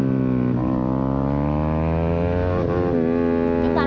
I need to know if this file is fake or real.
real